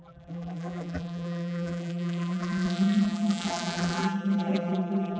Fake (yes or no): yes